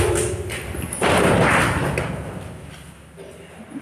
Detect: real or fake real